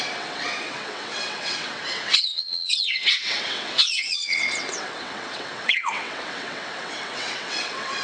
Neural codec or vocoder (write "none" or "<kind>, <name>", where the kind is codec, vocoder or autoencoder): vocoder, WaveNeXt